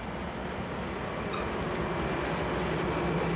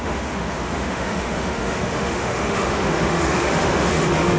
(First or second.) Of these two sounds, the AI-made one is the second